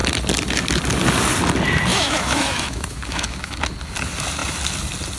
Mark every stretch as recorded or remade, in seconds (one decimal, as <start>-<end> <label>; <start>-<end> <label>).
0.0-1.9 recorded; 1.9-3.6 remade; 3.6-5.2 recorded